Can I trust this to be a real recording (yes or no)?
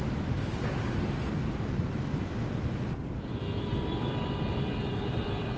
no